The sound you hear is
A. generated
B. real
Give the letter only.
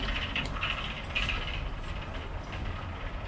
B